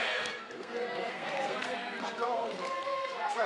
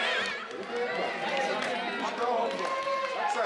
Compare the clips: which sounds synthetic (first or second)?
first